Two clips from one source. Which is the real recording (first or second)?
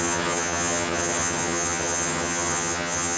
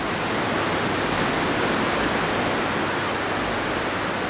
second